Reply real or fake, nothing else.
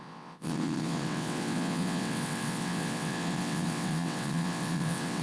fake